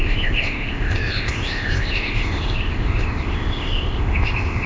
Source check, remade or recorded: remade